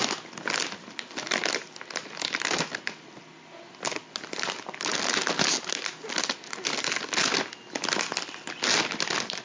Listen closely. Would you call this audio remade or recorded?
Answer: recorded